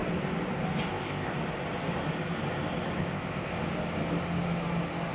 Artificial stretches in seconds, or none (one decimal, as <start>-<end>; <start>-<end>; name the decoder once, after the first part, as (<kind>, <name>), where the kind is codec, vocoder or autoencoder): 0.9-1.3 (codec, ZipCodec); 3.0-3.5